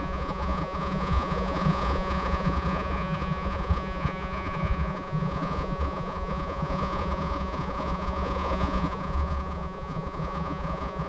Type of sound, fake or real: fake